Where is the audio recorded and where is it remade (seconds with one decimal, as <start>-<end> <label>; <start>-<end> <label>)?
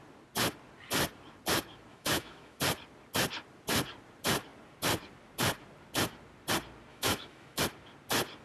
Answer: 0.0-1.9 recorded; 1.9-2.6 remade; 2.6-6.9 recorded; 6.9-7.6 remade; 7.6-8.4 recorded